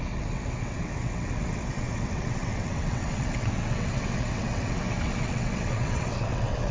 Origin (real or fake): fake